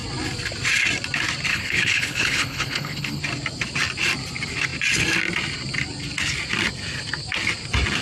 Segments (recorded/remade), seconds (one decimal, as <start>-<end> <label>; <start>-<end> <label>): 0.0-1.5 recorded; 1.5-3.2 remade; 3.2-8.0 recorded

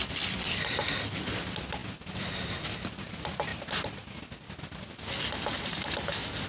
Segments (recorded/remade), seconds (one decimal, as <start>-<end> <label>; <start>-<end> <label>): 0.0-6.5 recorded

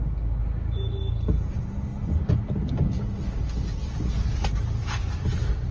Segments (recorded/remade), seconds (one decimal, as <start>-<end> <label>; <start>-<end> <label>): 0.0-5.7 recorded

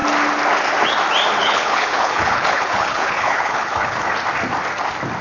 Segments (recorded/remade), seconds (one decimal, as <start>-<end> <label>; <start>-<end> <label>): 0.0-1.4 recorded; 1.4-4.1 remade; 4.1-5.2 recorded

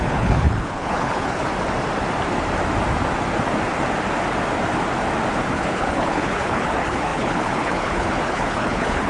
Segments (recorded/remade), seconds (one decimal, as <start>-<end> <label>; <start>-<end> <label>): 0.0-1.5 remade; 1.5-5.5 recorded; 5.5-9.1 remade

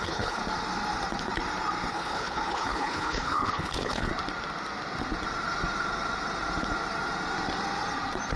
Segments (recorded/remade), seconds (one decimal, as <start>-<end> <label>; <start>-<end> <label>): 0.0-0.4 remade; 0.4-1.9 recorded; 1.9-4.1 remade; 4.1-8.4 recorded

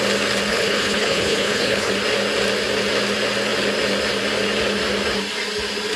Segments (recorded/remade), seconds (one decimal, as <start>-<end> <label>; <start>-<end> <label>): 0.0-0.5 recorded; 0.5-1.9 remade; 1.9-6.0 recorded

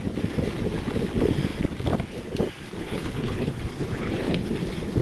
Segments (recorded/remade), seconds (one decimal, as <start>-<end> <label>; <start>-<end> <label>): 0.0-2.8 recorded; 2.8-4.5 remade; 4.5-5.0 recorded